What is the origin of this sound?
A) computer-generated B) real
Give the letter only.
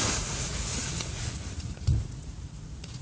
A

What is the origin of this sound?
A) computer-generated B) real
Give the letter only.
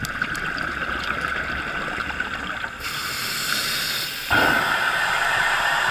B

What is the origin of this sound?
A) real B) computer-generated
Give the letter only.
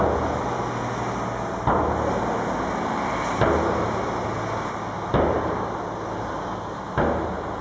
A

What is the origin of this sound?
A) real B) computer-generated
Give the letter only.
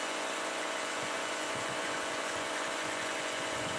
B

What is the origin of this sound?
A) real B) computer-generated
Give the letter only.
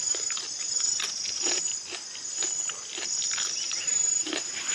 A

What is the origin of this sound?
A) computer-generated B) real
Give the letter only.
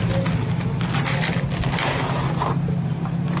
B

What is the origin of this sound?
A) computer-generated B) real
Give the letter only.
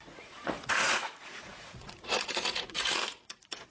A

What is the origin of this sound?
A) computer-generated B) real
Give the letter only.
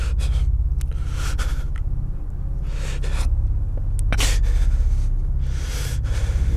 B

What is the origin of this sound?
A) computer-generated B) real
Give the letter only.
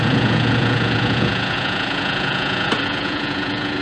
A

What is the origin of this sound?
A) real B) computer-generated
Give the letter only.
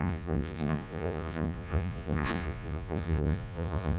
B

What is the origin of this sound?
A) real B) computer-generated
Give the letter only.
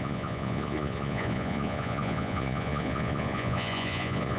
B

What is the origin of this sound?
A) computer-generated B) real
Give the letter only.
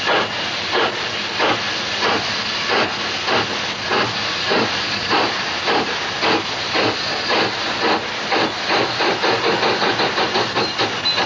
B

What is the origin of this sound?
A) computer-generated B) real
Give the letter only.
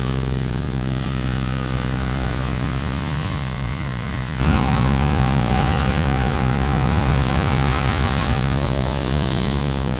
A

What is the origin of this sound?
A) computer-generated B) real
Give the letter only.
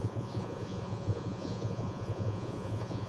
A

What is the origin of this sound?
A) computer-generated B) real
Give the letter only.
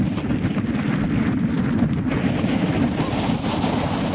B